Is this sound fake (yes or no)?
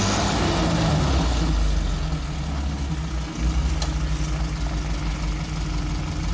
no